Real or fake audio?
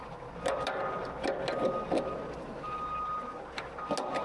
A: real